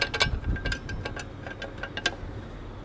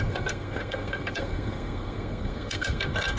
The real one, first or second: first